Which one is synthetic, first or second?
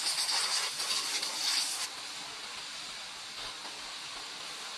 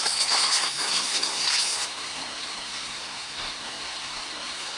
second